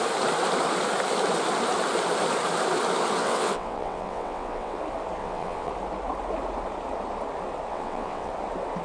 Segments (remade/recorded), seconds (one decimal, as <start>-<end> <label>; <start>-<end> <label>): 0.0-3.2 recorded; 3.2-4.8 remade; 4.8-5.2 recorded; 5.2-5.7 remade; 5.7-7.7 recorded; 7.7-8.3 remade; 8.3-8.8 recorded